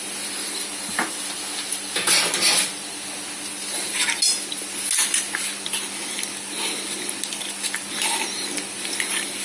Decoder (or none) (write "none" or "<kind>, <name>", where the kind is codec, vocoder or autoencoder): none